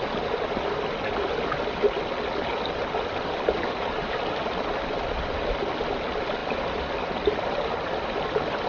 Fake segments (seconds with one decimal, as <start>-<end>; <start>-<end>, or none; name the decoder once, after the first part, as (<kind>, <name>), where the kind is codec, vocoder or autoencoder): none